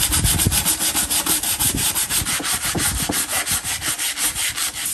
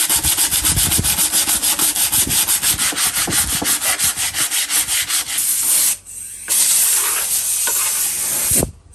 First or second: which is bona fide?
second